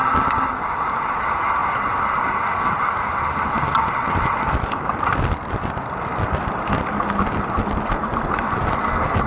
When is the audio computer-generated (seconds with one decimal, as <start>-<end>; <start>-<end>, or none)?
none